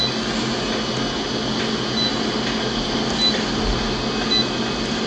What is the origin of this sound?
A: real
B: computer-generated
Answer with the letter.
A